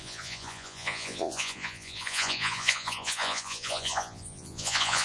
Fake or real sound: fake